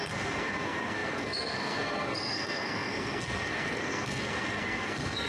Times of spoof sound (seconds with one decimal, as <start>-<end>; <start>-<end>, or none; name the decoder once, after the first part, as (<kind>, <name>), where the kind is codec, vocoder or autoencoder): 0.0-5.3 (codec, SNAC)